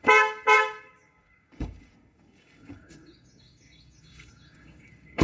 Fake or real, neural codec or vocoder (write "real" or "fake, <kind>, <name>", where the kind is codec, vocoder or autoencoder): fake, codec, DAC